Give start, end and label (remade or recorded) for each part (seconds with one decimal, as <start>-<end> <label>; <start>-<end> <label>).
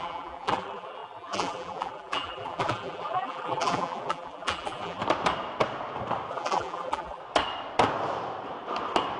0.0-5.0 remade; 5.0-6.3 recorded; 6.3-7.2 remade; 7.2-9.2 recorded